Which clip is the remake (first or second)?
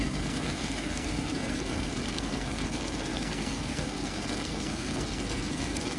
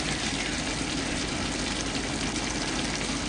first